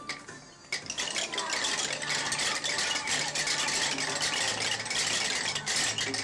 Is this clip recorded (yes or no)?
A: yes